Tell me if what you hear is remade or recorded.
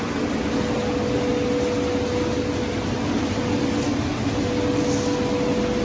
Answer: recorded